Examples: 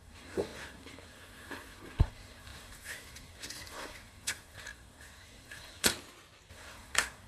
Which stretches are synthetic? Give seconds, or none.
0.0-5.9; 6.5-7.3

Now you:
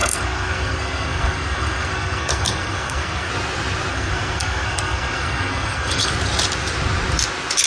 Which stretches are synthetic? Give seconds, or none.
0.0-3.3; 3.9-6.1

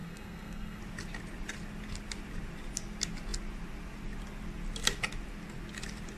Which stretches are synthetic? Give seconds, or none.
0.0-0.8